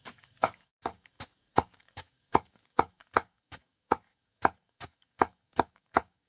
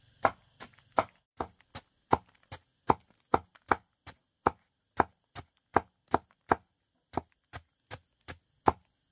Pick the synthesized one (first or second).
first